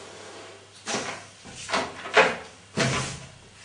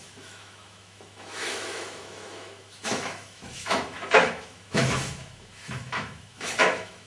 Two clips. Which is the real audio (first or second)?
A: first